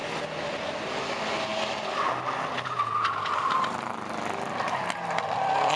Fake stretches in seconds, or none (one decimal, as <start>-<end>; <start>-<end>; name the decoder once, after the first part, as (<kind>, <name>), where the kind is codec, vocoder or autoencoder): none